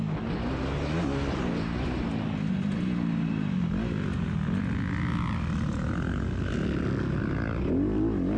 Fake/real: real